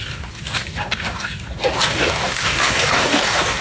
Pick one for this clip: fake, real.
fake